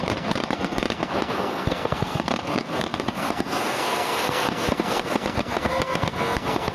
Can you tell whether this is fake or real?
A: fake